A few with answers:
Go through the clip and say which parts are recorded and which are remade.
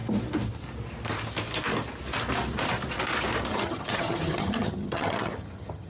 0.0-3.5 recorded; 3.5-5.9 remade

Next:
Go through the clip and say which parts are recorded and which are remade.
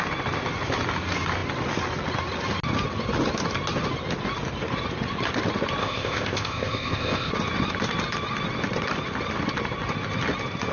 0.0-5.8 recorded; 5.8-7.3 remade; 7.3-10.7 recorded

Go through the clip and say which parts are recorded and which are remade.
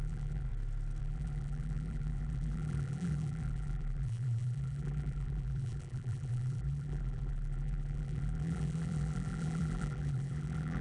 0.0-0.5 remade; 0.5-1.0 recorded; 1.0-10.8 remade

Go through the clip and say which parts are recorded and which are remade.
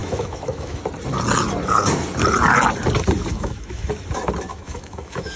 0.0-0.8 remade; 0.8-3.3 recorded; 3.3-3.9 remade; 3.9-4.5 recorded; 4.5-5.4 remade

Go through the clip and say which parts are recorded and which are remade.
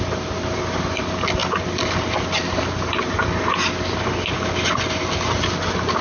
0.0-6.0 recorded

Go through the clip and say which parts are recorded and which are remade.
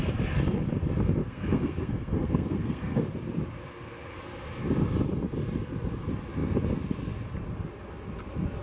0.0-1.2 recorded; 1.2-3.1 remade; 3.1-8.6 recorded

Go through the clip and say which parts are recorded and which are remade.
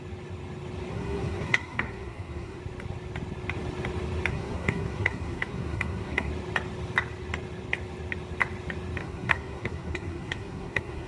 0.0-0.9 recorded; 0.9-2.6 remade; 2.6-4.3 recorded; 4.3-6.3 remade; 6.3-9.0 recorded; 9.0-11.1 remade